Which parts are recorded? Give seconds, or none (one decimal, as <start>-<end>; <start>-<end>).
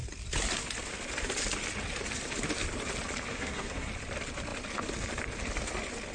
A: 0.0-3.3; 3.9-6.1